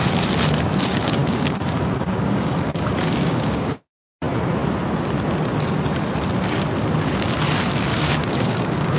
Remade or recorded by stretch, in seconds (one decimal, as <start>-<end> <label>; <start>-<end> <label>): 0.0-0.9 recorded; 0.9-4.1 remade; 4.1-7.9 recorded; 7.9-9.0 remade